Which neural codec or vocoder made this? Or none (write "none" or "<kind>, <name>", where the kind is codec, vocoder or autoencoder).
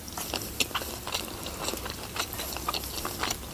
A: none